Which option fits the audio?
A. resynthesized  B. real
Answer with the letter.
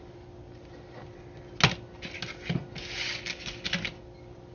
B